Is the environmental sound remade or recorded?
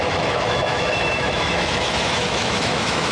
remade